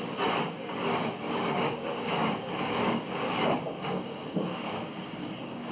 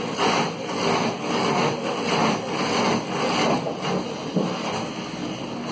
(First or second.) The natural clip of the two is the second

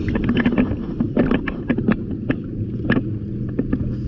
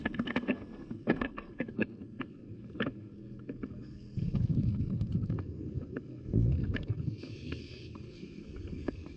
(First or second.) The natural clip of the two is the first